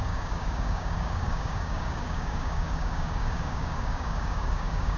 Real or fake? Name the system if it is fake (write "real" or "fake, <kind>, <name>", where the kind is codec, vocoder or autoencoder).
fake, codec, DAC